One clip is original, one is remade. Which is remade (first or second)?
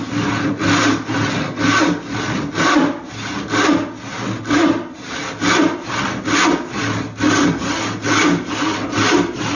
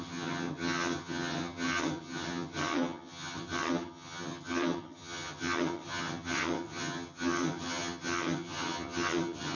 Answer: second